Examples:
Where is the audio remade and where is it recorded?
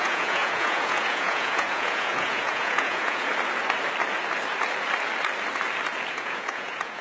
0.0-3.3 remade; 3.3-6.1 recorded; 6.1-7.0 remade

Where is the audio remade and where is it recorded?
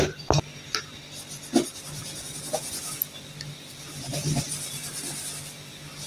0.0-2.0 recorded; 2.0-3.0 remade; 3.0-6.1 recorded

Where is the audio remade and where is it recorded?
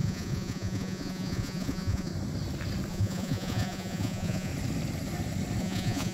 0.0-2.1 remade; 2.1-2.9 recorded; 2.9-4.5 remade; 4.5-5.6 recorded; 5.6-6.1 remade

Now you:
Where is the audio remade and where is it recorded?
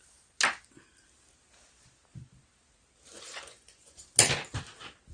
0.0-3.1 recorded; 3.1-4.1 remade; 4.1-5.1 recorded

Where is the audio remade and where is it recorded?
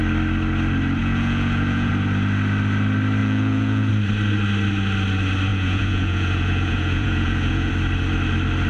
0.0-1.0 recorded; 1.0-1.9 remade; 1.9-3.2 recorded; 3.2-3.9 remade; 3.9-5.5 recorded; 5.5-7.7 remade; 7.7-8.7 recorded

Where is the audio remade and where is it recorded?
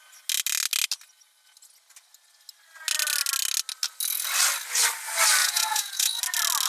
0.0-5.4 recorded; 5.4-6.2 remade; 6.2-6.7 recorded